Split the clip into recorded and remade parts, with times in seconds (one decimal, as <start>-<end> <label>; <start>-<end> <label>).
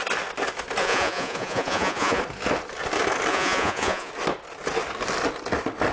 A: 0.0-0.8 recorded; 0.8-2.2 remade; 2.2-3.3 recorded; 3.3-4.1 remade; 4.1-5.9 recorded